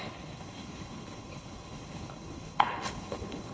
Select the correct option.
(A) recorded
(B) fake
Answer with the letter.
B